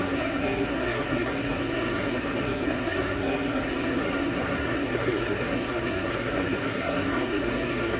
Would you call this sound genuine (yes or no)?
no